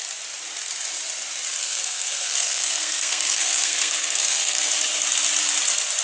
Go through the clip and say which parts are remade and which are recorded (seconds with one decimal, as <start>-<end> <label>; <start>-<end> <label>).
0.0-1.6 recorded; 1.6-4.7 remade; 4.7-6.0 recorded